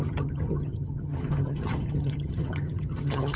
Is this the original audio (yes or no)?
no